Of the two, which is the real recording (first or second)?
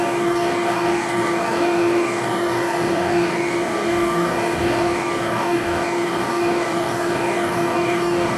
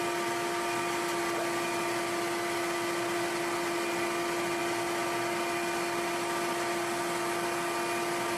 second